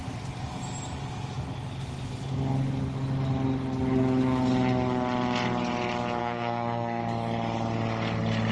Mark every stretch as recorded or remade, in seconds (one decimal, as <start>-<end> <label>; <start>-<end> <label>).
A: 0.0-6.2 recorded; 6.2-7.0 remade; 7.0-8.5 recorded